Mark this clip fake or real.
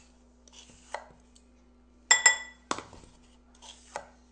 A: real